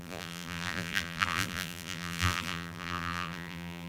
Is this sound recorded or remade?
remade